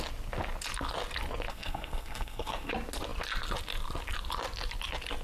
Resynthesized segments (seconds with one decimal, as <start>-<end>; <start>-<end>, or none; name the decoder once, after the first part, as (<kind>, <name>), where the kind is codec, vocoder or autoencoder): 1.5-2.7 (codec, SNAC)